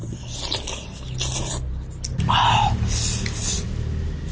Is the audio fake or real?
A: real